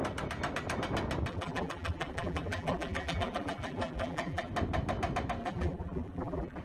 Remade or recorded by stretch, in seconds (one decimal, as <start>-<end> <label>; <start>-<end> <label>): 0.0-1.3 recorded; 1.3-4.5 remade; 4.5-5.4 recorded; 5.4-6.6 remade